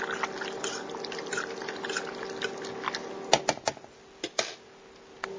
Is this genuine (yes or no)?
yes